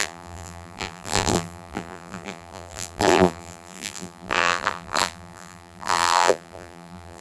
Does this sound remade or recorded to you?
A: remade